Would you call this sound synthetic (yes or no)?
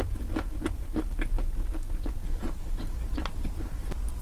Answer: no